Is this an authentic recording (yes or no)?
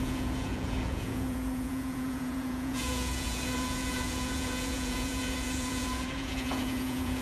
no